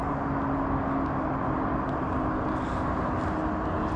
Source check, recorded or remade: recorded